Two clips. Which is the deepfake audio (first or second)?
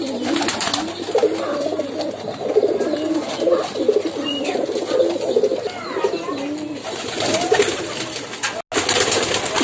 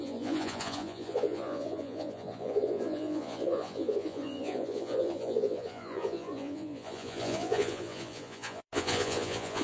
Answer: second